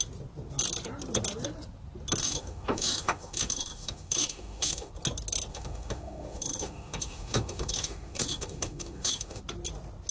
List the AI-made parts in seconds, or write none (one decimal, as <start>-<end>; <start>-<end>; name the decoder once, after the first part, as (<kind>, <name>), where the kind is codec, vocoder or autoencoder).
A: 2.2-4.9 (autoencoder, DAC-VAE); 5.5-9.4